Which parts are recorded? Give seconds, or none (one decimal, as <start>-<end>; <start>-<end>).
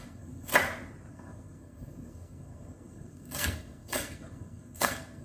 0.5-1.1